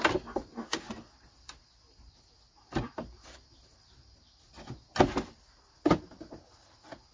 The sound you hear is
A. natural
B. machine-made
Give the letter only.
A